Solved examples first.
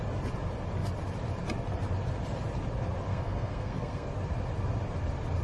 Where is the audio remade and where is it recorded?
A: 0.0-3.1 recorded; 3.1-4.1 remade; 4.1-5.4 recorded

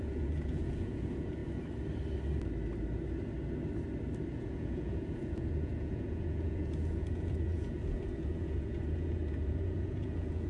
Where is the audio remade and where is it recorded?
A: 0.0-1.4 remade; 1.4-4.3 recorded; 4.3-10.5 remade

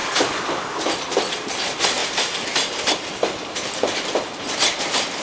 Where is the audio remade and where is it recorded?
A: 0.0-0.5 remade; 0.5-2.0 recorded; 2.0-5.2 remade

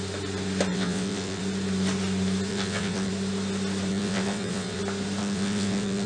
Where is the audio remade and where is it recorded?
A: 0.0-0.7 recorded; 0.7-1.4 remade; 1.4-2.5 recorded; 2.5-3.1 remade; 3.1-3.9 recorded; 3.9-4.8 remade; 4.8-5.2 recorded; 5.2-6.1 remade

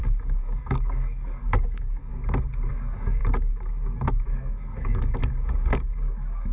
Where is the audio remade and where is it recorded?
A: 0.0-2.1 remade; 2.1-2.7 recorded; 2.7-6.5 remade

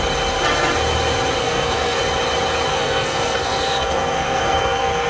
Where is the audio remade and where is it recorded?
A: 0.0-1.4 recorded; 1.4-2.0 remade; 2.0-2.7 recorded; 2.7-5.1 remade